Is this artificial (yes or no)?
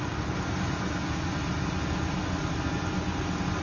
no